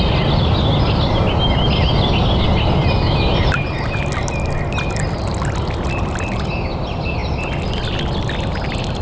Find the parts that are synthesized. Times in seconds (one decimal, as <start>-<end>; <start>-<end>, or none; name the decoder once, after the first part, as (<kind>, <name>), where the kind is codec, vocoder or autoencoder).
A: none